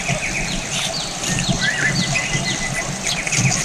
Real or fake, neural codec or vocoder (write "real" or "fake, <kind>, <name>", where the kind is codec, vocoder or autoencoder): real